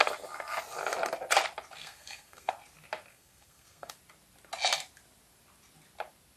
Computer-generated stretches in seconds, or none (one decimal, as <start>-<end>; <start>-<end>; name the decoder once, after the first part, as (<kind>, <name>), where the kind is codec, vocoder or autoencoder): 1.8-2.5 (codec, SNAC); 3.1-3.9